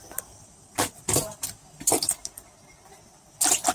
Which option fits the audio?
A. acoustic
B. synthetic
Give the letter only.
A